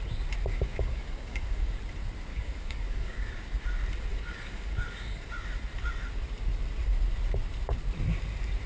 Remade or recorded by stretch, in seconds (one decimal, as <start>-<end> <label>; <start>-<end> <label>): 0.0-0.5 recorded; 0.5-1.8 remade; 1.8-2.3 recorded; 2.3-3.3 remade; 3.3-4.1 recorded; 4.1-5.3 remade; 5.3-8.7 recorded

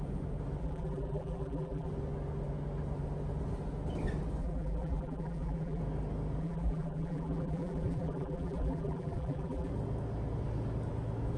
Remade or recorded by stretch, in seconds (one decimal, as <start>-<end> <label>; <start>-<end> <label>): 0.0-0.6 recorded; 0.6-1.9 remade; 1.9-4.4 recorded; 4.4-5.8 remade; 5.8-6.4 recorded; 6.4-9.7 remade; 9.7-11.4 recorded

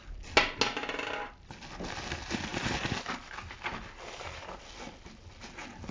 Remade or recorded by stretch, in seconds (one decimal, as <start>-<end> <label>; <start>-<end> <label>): 0.0-5.9 recorded

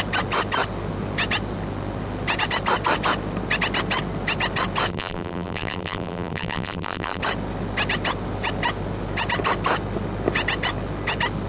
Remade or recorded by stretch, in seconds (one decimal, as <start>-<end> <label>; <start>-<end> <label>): 0.0-4.9 recorded; 4.9-7.2 remade; 7.2-11.5 recorded

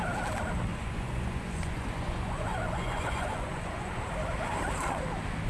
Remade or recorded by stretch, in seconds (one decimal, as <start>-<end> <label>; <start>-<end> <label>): 0.0-0.7 recorded; 0.7-4.0 remade; 4.0-5.5 recorded